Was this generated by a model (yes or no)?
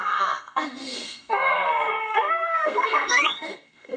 yes